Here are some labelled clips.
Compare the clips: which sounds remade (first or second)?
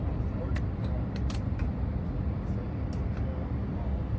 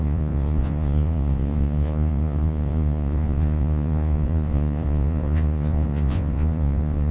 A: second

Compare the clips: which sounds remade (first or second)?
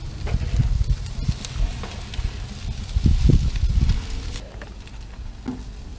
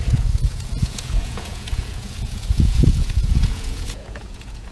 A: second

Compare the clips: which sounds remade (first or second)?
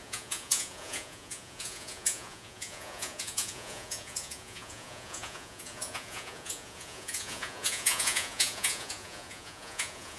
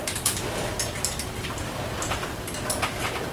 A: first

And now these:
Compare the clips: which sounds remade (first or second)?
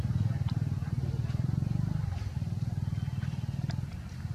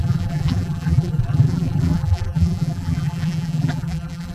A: second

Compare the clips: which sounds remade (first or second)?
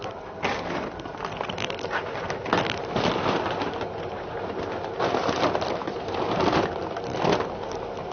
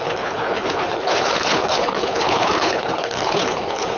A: second